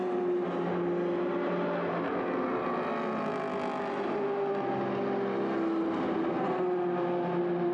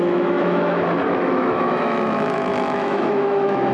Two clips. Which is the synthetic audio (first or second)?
second